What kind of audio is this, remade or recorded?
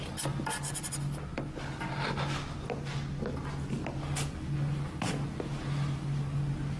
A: recorded